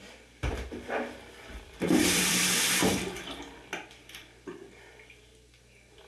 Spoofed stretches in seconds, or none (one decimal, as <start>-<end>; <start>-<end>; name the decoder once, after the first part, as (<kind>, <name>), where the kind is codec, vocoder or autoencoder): 0.5-2.4 (vocoder, BigVGAN v2)